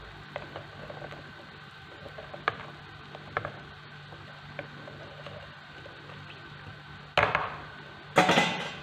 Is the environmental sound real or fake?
real